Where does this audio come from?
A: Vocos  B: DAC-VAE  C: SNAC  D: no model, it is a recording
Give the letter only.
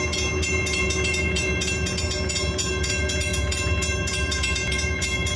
A